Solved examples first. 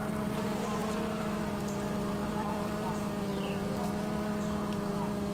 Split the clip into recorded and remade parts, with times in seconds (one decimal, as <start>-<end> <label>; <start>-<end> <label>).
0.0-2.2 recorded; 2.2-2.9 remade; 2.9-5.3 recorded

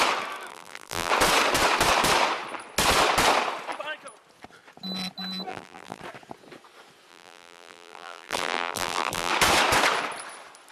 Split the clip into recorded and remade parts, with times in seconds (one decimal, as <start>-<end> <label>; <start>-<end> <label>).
0.0-0.5 recorded; 0.5-1.1 remade; 1.1-5.5 recorded; 5.5-6.0 remade; 6.0-7.1 recorded; 7.1-9.3 remade; 9.3-10.7 recorded

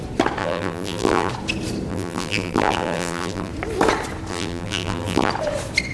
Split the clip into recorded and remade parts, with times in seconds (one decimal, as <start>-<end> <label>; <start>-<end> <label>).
0.0-0.4 recorded; 0.4-1.3 remade; 1.3-1.9 recorded; 1.9-3.5 remade; 3.5-4.3 recorded; 4.3-5.3 remade; 5.3-5.9 recorded

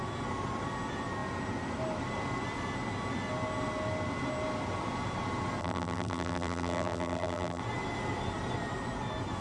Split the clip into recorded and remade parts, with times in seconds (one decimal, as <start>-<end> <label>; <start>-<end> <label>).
0.0-5.6 recorded; 5.6-7.6 remade; 7.6-9.4 recorded

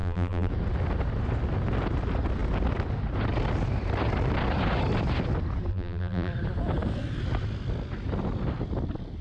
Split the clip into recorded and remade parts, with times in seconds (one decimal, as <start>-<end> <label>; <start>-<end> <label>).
0.0-0.5 remade; 0.5-5.7 recorded; 5.7-6.3 remade; 6.3-9.2 recorded